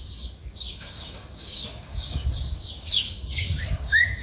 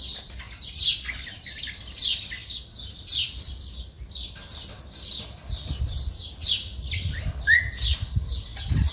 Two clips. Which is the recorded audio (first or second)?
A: second